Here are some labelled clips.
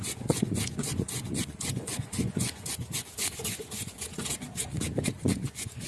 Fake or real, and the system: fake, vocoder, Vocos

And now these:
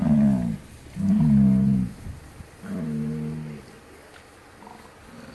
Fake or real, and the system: real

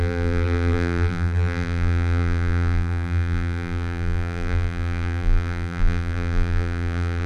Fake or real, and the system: fake, vocoder, BigVGAN v2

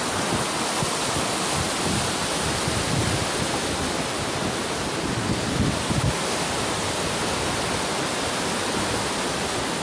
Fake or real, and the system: real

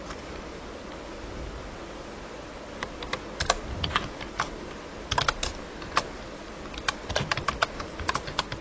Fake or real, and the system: real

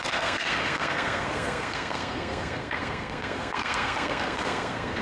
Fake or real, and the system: fake, codec, SNAC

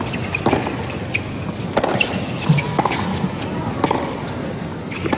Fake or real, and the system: real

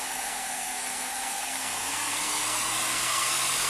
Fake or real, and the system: fake, codec, SNAC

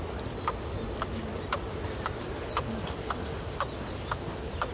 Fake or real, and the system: real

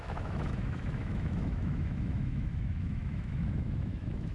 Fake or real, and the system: fake, autoencoder, DAC-VAE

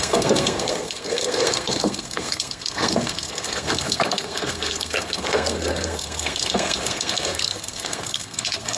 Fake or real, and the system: fake, codec, SNAC